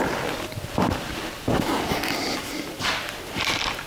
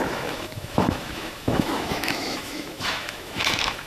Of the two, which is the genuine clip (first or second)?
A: first